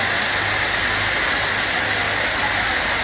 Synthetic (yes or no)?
no